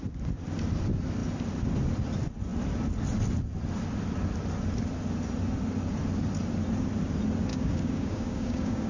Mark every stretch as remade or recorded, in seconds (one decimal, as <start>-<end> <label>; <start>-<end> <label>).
0.0-7.5 recorded; 7.5-8.9 remade